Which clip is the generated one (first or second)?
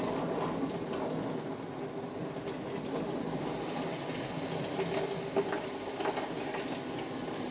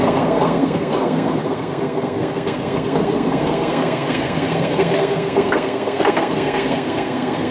second